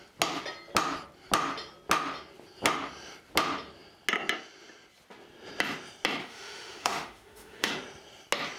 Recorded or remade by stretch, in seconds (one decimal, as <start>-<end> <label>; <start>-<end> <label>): 0.0-6.2 recorded; 6.2-7.7 remade; 7.7-8.6 recorded